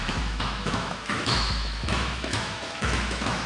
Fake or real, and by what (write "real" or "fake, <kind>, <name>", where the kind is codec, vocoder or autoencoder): fake, autoencoder, DAC-VAE